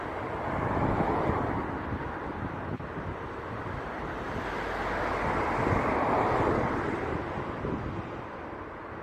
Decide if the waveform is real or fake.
real